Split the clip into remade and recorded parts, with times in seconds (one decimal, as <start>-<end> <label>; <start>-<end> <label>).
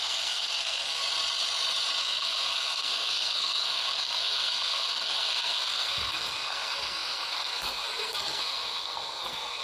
0.0-1.0 remade; 1.0-2.0 recorded; 2.0-9.6 remade